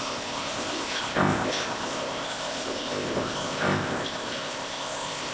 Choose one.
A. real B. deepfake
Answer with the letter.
B